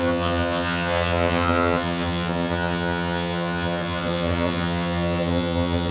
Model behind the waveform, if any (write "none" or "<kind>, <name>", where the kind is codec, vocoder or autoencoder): vocoder, HiFi-GAN